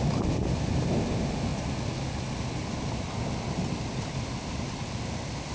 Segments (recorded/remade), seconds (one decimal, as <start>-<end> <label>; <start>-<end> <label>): 0.0-5.5 recorded